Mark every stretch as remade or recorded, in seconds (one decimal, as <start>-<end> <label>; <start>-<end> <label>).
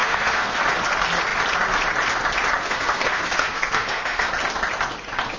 0.0-0.6 remade; 0.6-2.6 recorded; 2.6-4.3 remade; 4.3-5.4 recorded